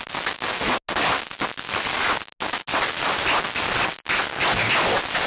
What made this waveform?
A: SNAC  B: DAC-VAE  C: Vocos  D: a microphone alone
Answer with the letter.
D